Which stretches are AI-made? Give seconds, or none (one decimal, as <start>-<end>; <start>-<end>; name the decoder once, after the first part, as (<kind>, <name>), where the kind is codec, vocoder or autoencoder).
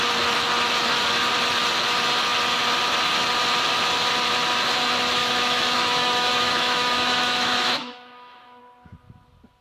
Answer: 5.2-8.6 (autoencoder, DAC-VAE)